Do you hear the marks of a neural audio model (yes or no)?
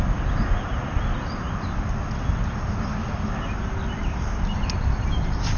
no